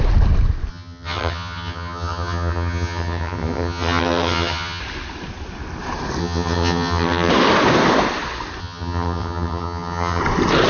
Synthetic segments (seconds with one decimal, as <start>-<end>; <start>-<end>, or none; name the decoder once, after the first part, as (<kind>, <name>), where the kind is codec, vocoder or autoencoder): 0.7-4.8 (vocoder, HiFi-GAN); 6.2-7.3; 8.6-10.2